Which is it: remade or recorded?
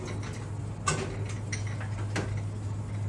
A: recorded